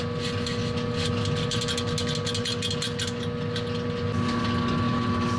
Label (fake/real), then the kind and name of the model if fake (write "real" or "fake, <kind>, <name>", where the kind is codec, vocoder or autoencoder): real